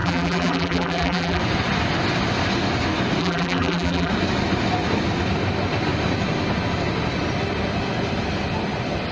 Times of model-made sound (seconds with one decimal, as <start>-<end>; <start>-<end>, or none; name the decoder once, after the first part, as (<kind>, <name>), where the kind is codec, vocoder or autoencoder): 0.0-1.4 (vocoder, BigVGAN v2); 3.2-4.1